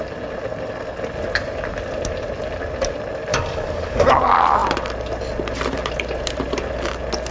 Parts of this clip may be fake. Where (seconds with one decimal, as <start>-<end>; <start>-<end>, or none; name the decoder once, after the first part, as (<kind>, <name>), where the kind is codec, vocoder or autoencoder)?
3.3-4.1 (codec, DAC)